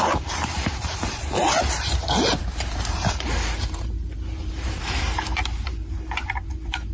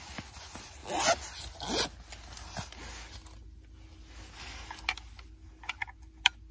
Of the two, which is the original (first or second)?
second